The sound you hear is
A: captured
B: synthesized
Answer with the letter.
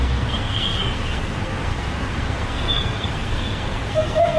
B